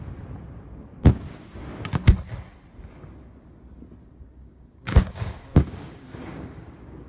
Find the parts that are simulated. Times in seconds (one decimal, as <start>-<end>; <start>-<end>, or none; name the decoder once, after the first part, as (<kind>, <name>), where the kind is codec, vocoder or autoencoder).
4.4-7.1 (codec, DAC)